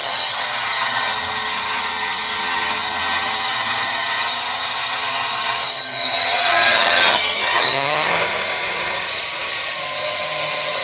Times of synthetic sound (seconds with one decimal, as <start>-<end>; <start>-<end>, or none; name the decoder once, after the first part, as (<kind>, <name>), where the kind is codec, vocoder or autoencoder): 0.0-10.8 (vocoder, HiFi-GAN)